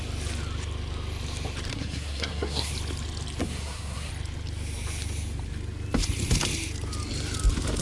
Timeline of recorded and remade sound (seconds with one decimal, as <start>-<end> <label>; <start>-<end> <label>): 0.0-1.7 recorded; 1.7-2.7 remade; 2.7-3.4 recorded; 3.4-4.1 remade; 4.1-7.8 recorded